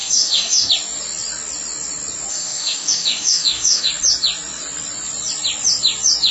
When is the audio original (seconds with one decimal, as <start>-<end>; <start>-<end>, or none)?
0.7-2.3; 3.9-6.3